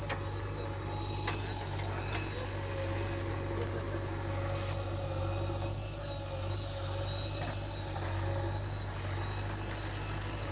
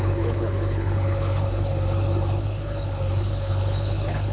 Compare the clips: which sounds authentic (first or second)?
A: first